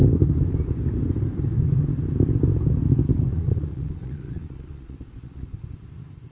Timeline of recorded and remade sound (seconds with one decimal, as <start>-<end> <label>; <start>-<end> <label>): 0.0-3.3 recorded; 3.3-5.6 remade; 5.6-6.3 recorded